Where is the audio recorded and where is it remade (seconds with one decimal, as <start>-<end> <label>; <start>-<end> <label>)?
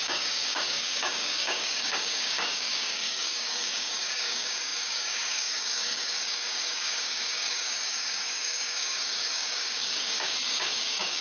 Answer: 0.0-11.2 remade